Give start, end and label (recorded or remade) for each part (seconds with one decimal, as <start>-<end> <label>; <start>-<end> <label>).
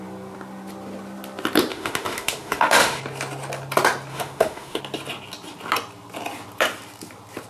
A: 0.0-1.7 recorded; 1.7-3.0 remade; 3.0-4.1 recorded; 4.1-4.8 remade; 4.8-7.5 recorded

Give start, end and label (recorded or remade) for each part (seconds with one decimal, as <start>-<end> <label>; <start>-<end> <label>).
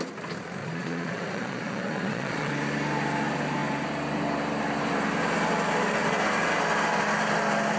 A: 0.0-0.6 recorded; 0.6-2.5 remade; 2.5-7.8 recorded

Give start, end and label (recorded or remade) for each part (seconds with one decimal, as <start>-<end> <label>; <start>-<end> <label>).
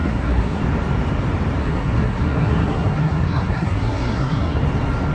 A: 0.0-0.6 remade; 0.6-1.6 recorded; 1.6-4.6 remade; 4.6-5.1 recorded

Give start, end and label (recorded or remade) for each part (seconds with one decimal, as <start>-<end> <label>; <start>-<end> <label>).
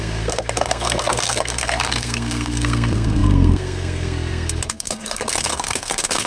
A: 0.0-6.3 remade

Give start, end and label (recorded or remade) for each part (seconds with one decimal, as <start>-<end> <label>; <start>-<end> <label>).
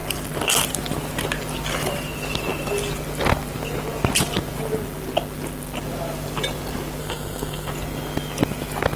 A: 0.0-7.0 recorded; 7.0-7.7 remade; 7.7-9.0 recorded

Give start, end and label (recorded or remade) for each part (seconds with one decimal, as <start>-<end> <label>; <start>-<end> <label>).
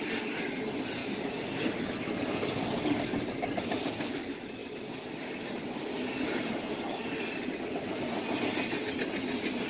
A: 0.0-9.7 recorded